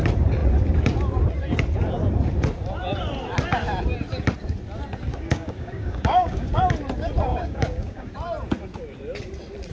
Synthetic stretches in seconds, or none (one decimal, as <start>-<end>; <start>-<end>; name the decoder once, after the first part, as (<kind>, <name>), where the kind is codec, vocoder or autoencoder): 5.1-6.6 (codec, DAC); 7.3-8.1